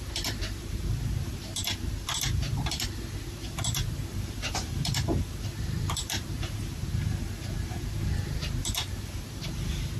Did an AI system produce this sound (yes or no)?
yes